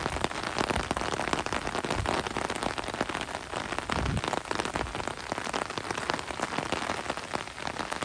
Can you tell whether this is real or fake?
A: real